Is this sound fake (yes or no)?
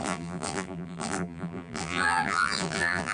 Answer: yes